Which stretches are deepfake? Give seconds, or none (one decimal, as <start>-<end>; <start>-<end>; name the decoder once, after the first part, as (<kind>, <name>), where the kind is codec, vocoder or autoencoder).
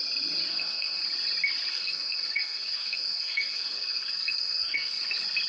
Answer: 0.5-1.0 (codec, SNAC); 1.7-5.0